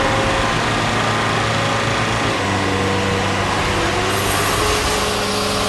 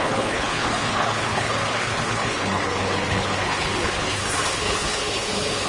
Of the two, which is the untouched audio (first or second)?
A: first